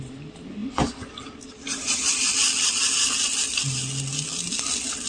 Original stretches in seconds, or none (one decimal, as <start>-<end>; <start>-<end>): 0.0-0.6; 2.0-5.1